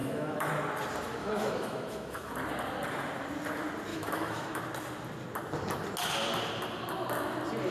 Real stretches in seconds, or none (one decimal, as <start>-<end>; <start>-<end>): 0.5-1.2; 2.3-3.9; 4.6-7.7